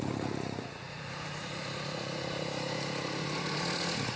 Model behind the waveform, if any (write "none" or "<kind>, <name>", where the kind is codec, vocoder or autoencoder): vocoder, Vocos